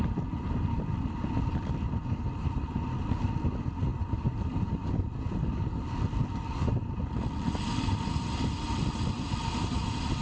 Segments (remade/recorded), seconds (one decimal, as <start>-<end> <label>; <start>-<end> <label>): 0.0-3.9 recorded; 3.9-5.1 remade; 5.1-10.2 recorded